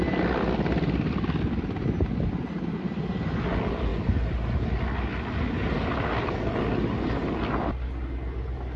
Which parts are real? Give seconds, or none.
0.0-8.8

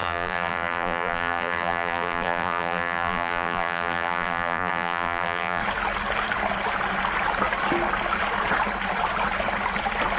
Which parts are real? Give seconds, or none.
5.6-10.2